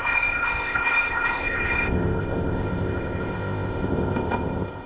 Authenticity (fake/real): fake